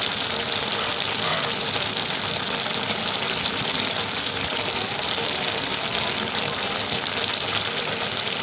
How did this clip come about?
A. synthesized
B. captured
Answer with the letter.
A